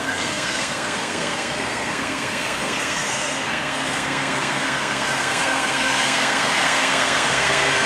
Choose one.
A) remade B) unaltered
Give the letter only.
A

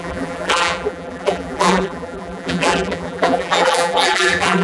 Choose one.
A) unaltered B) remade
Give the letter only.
B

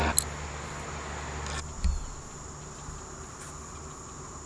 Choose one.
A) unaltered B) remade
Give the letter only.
A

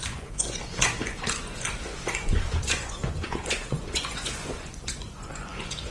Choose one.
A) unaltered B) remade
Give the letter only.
B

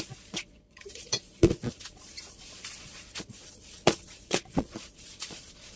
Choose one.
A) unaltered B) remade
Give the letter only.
B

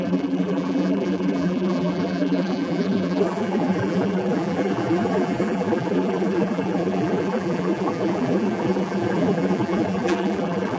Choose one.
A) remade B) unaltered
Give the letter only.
A